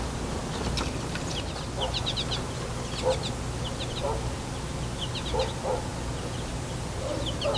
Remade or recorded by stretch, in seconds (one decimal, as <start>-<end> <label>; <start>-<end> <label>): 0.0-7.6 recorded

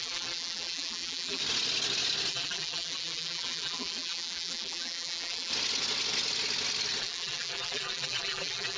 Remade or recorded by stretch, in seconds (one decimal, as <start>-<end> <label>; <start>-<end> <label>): 0.0-1.4 remade; 1.4-2.3 recorded; 2.3-5.5 remade; 5.5-7.0 recorded; 7.0-8.8 remade

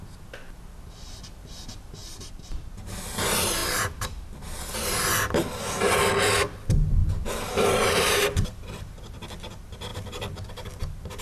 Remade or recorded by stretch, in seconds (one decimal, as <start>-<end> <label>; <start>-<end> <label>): 0.0-2.0 recorded; 2.0-2.9 remade; 2.9-3.6 recorded; 3.6-4.6 remade; 4.6-7.0 recorded; 7.0-8.7 remade; 8.7-11.2 recorded

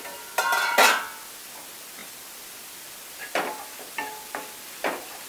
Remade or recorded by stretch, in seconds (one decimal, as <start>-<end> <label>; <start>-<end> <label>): 0.0-2.0 recorded; 2.0-3.2 remade; 3.2-5.3 recorded

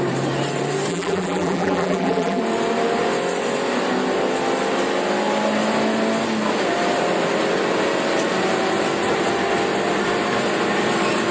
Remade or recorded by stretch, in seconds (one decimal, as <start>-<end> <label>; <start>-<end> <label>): 0.0-0.9 recorded; 0.9-2.4 remade; 2.4-11.3 recorded

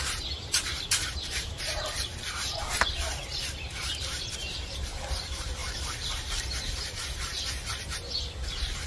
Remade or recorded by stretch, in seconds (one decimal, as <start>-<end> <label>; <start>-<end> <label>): 0.0-8.9 remade

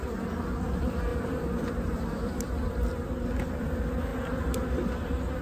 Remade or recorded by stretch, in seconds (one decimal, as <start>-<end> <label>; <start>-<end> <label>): 0.0-1.1 recorded; 1.1-2.7 remade; 2.7-5.4 recorded